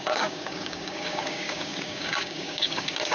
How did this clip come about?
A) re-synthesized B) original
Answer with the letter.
A